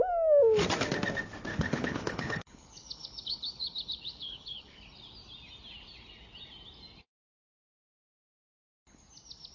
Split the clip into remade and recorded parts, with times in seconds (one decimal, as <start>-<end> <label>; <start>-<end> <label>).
0.0-1.5 recorded; 1.5-4.8 remade; 4.8-9.5 recorded